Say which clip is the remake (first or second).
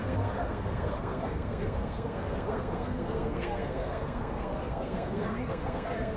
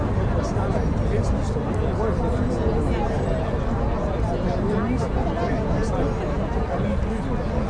first